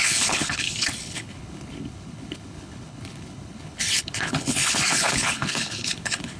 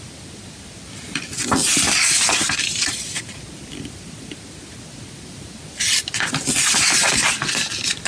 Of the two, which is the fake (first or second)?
first